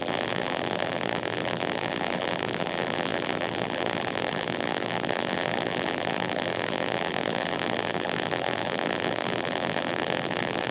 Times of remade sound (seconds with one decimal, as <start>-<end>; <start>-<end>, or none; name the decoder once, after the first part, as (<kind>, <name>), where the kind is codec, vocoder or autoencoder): 0.0-10.7 (vocoder, BigVGAN v2)